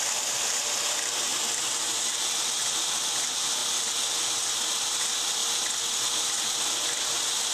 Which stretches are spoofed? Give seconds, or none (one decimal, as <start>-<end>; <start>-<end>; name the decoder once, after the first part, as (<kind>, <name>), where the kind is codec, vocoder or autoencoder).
0.0-7.5 (vocoder, BigVGAN v2)